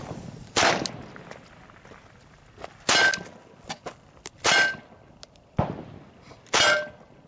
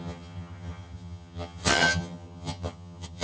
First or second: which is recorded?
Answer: first